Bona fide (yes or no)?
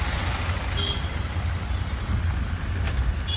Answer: yes